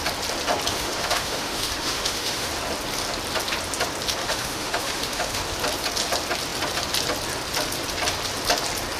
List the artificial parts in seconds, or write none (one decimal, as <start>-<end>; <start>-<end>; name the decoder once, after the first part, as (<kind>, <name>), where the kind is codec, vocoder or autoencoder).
0.7-2.5 (autoencoder, DAC-VAE); 4.2-5.4